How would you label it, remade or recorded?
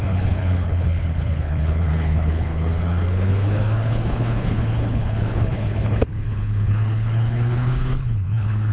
remade